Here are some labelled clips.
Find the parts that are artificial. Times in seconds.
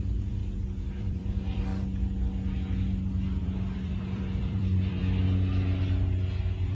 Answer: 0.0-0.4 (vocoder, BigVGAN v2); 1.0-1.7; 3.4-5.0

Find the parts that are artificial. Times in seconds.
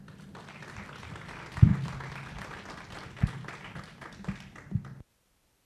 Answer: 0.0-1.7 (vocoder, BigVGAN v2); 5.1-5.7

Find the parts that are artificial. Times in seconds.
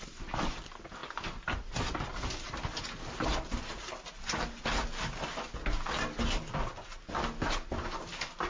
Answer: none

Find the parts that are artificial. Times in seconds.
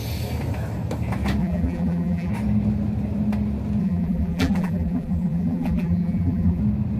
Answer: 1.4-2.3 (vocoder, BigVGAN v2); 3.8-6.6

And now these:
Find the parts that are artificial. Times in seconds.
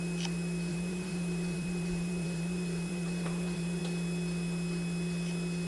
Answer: 0.7-3.8 (vocoder, BigVGAN v2)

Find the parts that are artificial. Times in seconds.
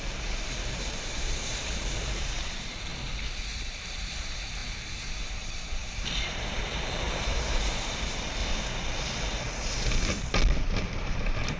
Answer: 0.0-2.9 (vocoder, BigVGAN v2); 4.0-8.4; 10.8-11.6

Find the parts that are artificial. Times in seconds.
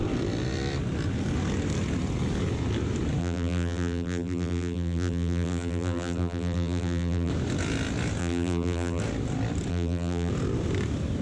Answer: 3.2-7.3 (vocoder, BigVGAN v2); 8.2-9.0; 9.7-10.3